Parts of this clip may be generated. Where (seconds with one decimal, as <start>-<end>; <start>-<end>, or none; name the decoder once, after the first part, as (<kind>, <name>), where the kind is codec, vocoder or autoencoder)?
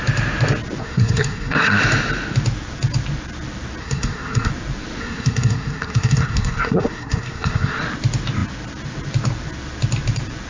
0.8-1.8 (codec, SNAC); 3.8-4.5; 5.0-7.8